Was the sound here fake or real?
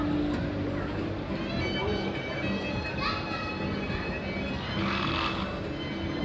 real